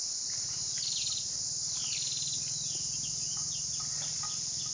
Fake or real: real